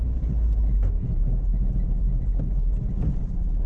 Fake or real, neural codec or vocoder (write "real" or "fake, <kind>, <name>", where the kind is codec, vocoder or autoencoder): real